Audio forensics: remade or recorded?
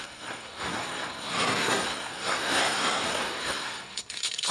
remade